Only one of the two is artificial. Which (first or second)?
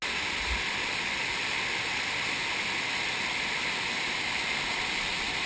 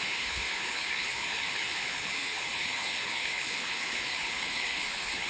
second